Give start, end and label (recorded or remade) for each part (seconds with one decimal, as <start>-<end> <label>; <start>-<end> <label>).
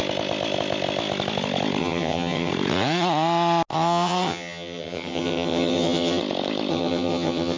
0.0-1.8 recorded; 1.8-2.5 remade; 2.5-3.7 recorded; 3.7-6.2 remade; 6.2-6.7 recorded; 6.7-7.6 remade